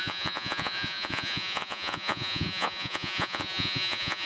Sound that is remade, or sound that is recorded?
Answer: remade